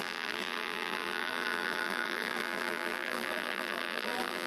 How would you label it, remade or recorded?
remade